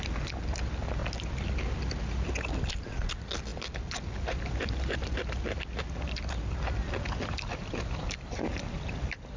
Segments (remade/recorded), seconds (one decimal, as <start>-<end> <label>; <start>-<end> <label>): 0.0-9.4 recorded